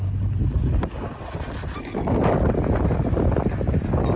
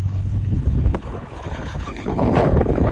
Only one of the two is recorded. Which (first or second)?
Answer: first